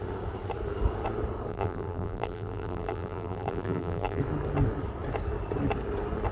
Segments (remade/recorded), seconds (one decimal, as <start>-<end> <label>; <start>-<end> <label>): 0.0-1.5 recorded; 1.5-4.2 remade; 4.2-6.3 recorded